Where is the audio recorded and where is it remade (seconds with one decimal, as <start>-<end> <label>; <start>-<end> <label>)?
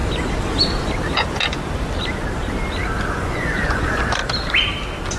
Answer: 0.0-3.1 recorded; 3.1-4.2 remade; 4.2-5.2 recorded